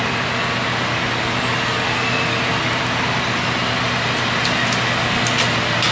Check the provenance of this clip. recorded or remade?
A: recorded